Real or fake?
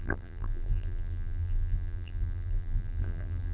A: fake